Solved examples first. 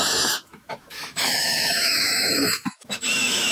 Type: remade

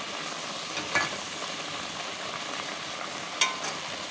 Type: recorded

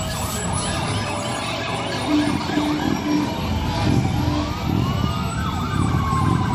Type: recorded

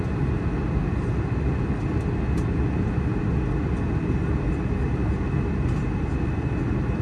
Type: recorded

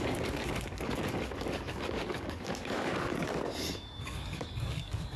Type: remade